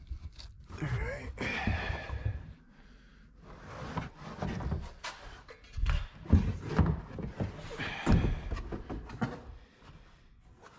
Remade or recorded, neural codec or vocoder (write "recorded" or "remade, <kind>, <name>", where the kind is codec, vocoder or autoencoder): recorded